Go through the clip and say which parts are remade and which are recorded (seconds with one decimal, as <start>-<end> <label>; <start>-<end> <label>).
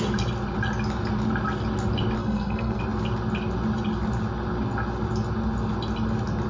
0.0-2.2 recorded; 2.2-2.8 remade; 2.8-6.5 recorded